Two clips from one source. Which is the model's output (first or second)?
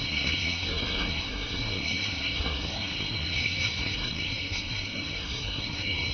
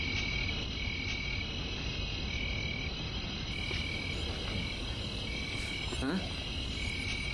first